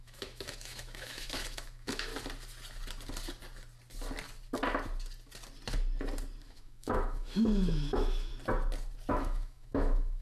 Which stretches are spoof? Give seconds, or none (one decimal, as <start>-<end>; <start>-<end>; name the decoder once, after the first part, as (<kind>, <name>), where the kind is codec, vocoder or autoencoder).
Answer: 0.0-2.1 (autoencoder, DAC-VAE); 6.4-8.3; 9.1-10.2